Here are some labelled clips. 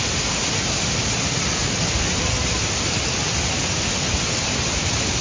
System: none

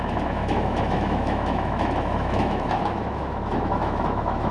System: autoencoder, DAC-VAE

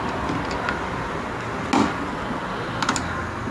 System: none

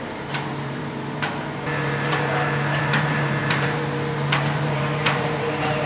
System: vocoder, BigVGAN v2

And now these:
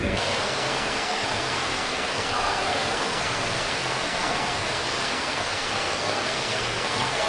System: codec, SNAC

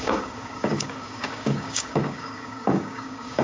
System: codec, DAC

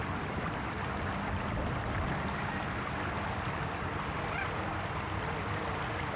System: none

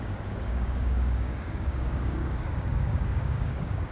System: codec, DAC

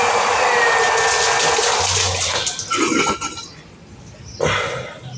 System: none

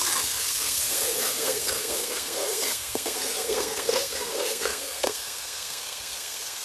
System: codec, SNAC